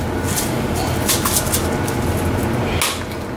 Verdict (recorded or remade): recorded